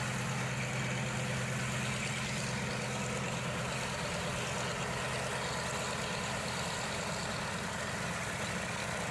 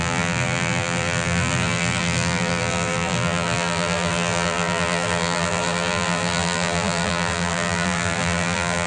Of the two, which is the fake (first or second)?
second